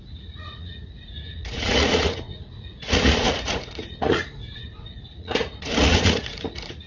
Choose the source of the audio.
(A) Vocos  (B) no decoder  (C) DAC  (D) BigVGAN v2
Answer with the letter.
A